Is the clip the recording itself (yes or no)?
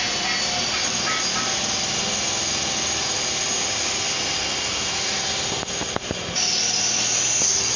yes